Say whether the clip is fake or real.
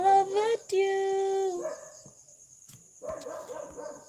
real